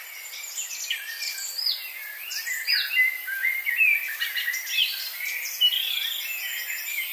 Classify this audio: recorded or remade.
recorded